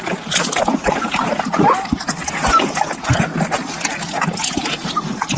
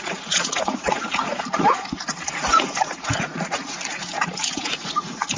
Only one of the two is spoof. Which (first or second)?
second